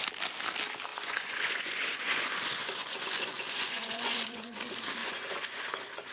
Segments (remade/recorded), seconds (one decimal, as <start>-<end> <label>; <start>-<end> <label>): 0.0-0.9 recorded; 0.9-4.6 remade; 4.6-5.0 recorded; 5.0-6.1 remade